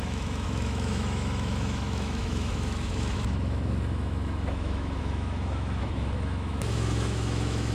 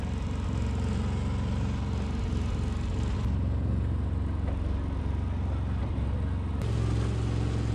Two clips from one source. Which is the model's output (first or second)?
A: first